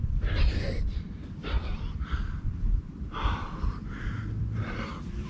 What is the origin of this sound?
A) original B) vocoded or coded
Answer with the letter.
B